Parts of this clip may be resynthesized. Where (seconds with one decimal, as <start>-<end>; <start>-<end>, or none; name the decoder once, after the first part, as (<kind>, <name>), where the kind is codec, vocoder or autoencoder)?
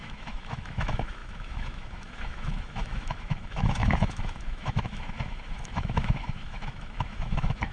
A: 0.0-7.7 (autoencoder, DAC-VAE)